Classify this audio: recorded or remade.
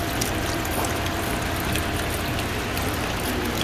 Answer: recorded